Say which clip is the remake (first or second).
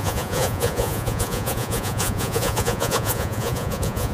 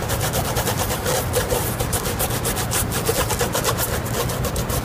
first